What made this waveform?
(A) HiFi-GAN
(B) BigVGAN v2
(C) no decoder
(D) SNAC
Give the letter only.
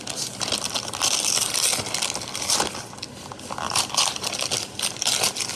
C